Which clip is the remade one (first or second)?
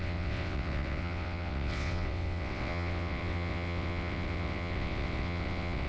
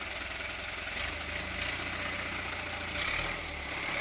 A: first